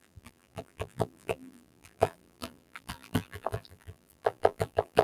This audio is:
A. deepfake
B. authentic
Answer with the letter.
A